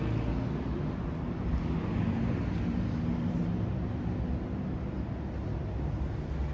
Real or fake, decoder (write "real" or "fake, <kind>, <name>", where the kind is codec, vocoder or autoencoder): real